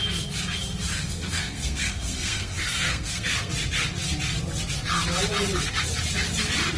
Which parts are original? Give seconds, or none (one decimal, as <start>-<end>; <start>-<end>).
0.0-0.9; 3.5-6.8